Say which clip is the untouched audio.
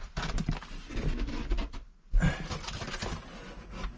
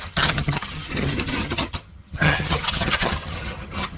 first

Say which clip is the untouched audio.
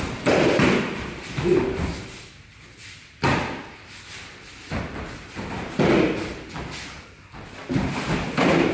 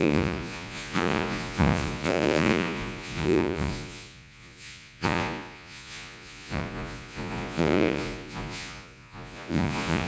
first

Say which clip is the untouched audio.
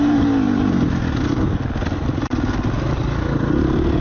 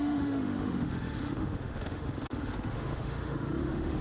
first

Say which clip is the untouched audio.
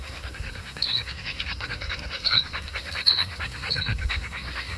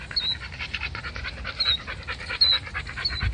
second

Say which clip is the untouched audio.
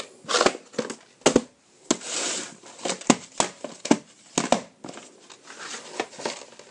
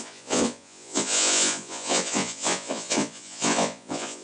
first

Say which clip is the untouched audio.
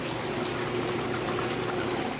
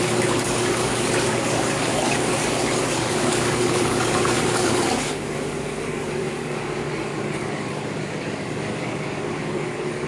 first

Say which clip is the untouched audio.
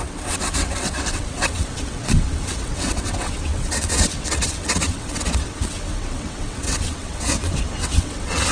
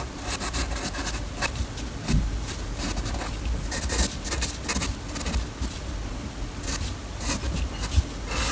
second